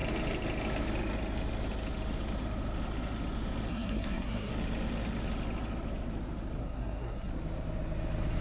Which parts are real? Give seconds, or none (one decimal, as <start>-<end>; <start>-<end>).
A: 0.0-3.7; 4.5-6.6; 7.3-8.4